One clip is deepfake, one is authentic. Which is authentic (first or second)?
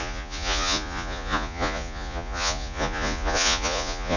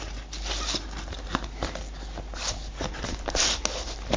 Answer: second